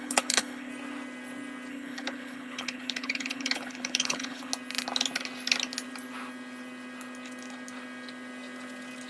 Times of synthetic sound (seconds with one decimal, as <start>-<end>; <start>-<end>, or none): 0.0-0.7; 1.7-4.5